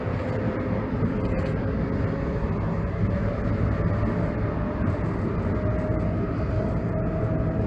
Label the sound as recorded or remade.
recorded